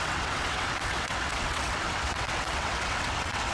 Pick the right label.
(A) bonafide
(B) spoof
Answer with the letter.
B